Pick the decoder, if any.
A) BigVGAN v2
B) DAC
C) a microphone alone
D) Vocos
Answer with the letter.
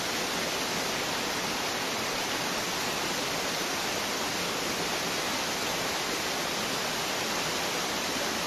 C